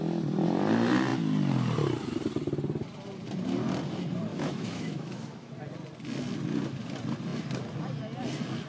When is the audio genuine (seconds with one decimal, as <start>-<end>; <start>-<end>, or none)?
0.0-4.3; 5.5-8.7